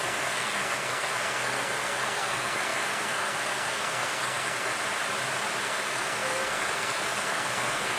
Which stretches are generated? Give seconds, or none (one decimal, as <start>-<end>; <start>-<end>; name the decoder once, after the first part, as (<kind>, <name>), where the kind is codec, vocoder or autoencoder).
0.0-4.7 (codec, SNAC); 5.6-8.0